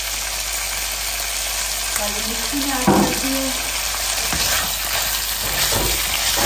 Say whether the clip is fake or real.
real